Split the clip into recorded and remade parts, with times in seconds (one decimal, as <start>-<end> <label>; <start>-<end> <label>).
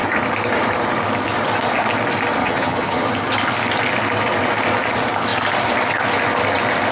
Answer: 0.0-2.4 recorded; 2.4-3.1 remade; 3.1-6.9 recorded